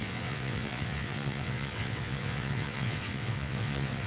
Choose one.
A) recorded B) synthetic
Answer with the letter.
B